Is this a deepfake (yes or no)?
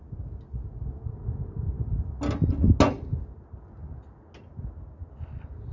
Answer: no